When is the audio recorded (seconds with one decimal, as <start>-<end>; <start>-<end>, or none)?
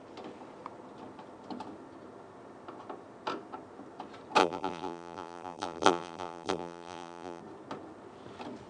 0.0-4.4; 7.4-8.7